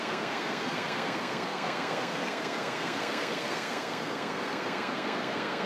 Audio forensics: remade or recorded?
remade